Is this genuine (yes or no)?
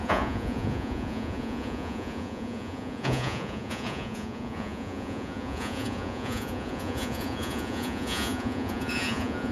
no